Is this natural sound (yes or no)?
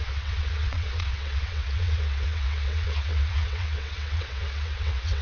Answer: no